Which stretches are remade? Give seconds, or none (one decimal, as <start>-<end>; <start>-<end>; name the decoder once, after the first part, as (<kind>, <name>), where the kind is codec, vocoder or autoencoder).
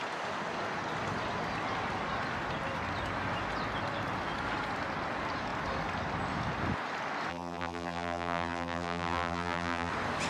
7.3-9.9 (vocoder, BigVGAN v2)